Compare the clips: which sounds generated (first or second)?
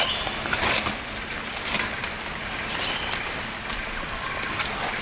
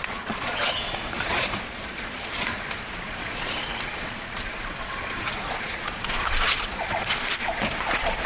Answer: second